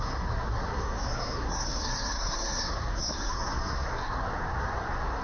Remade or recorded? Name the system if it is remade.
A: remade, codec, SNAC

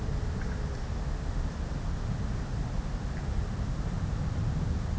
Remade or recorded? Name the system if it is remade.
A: recorded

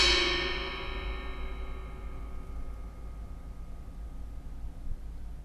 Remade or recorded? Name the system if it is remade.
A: recorded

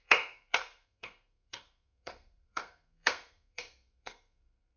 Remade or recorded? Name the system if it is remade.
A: remade, codec, SNAC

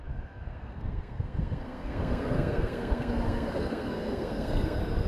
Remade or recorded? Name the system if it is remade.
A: remade, codec, SNAC